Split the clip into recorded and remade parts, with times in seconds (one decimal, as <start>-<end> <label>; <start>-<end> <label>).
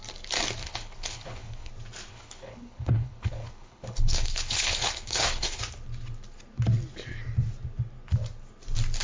0.0-0.6 recorded; 0.6-1.7 remade; 1.7-2.1 recorded; 2.1-5.6 remade; 5.6-9.0 recorded